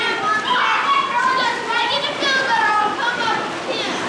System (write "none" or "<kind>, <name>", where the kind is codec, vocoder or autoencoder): none